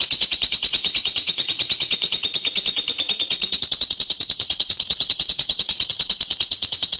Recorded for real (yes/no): no